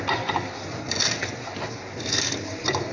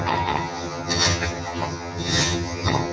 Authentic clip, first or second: first